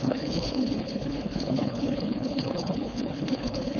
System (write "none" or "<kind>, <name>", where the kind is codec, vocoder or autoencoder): codec, HILCodec